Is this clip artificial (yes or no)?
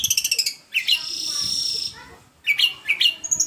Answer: no